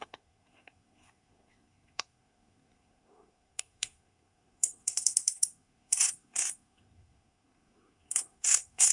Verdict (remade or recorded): remade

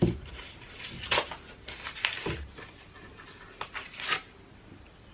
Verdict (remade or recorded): recorded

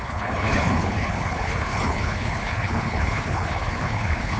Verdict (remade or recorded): remade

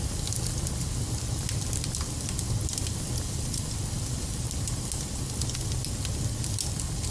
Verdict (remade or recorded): recorded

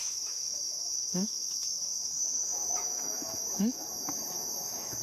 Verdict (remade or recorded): remade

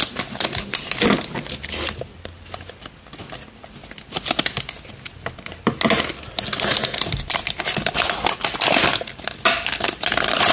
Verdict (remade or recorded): recorded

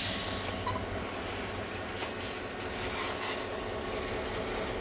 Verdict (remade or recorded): recorded